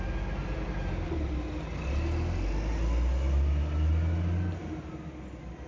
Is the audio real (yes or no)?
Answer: yes